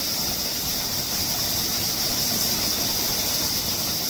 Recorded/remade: recorded